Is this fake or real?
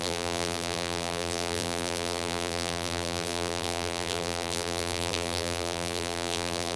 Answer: fake